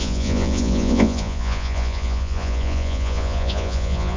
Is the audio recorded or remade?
remade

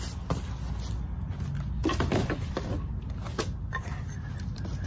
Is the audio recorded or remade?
recorded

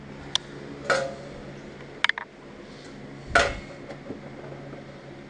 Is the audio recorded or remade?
recorded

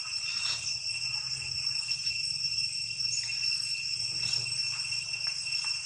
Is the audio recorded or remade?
recorded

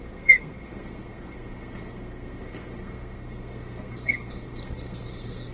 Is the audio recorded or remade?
remade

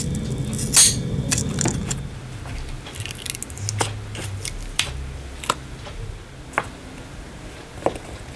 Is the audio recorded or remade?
recorded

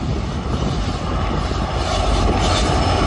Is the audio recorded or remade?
recorded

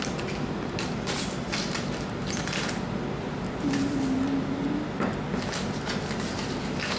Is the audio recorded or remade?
recorded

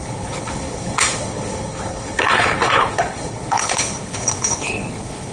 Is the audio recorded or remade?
remade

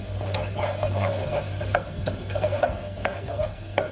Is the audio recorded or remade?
remade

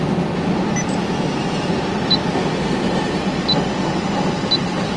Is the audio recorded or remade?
recorded